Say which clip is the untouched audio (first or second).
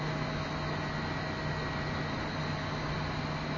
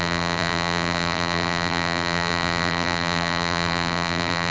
first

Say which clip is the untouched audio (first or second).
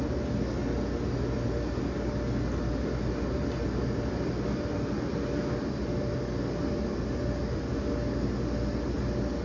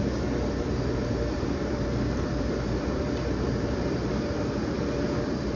first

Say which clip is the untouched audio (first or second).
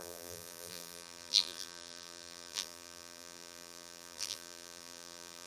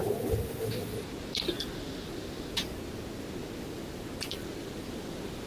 second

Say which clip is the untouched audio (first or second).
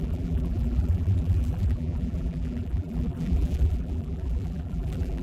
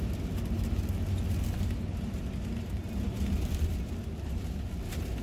second